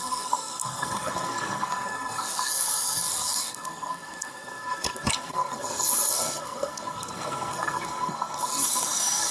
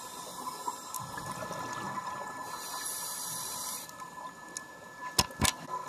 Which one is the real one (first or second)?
second